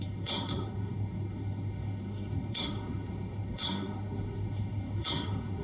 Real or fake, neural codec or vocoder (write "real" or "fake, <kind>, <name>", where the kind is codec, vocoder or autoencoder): fake, codec, SNAC